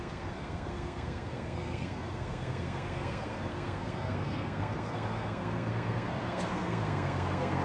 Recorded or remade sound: remade